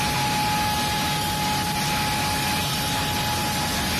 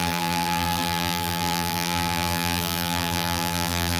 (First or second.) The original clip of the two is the first